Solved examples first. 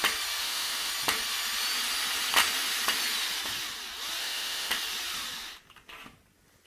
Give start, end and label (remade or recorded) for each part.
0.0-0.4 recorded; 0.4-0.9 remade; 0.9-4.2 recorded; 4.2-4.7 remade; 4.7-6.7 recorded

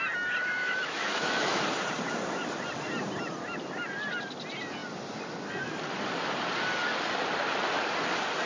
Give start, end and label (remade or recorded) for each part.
0.0-0.6 recorded; 0.6-1.6 remade; 1.6-8.5 recorded

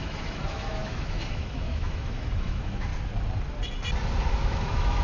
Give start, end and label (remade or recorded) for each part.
0.0-2.9 remade; 2.9-4.3 recorded; 4.3-5.0 remade

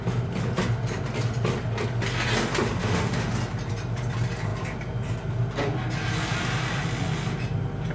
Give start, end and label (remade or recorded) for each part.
0.0-2.8 recorded; 2.8-3.3 remade; 3.3-7.9 recorded